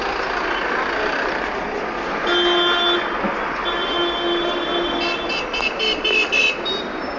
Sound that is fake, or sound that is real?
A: real